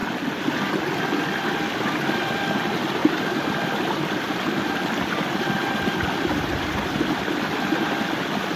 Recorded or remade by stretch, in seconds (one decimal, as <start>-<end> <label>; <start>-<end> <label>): 0.0-8.6 remade